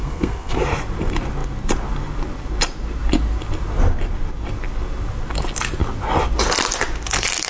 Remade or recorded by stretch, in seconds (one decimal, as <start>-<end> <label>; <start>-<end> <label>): 0.0-0.6 remade; 0.6-7.5 recorded